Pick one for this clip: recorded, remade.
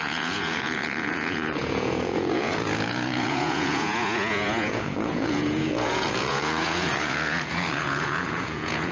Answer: remade